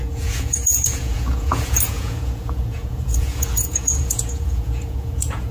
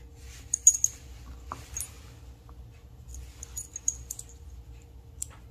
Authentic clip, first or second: second